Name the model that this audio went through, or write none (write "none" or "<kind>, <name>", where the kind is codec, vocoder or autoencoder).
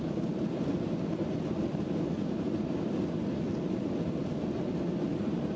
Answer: none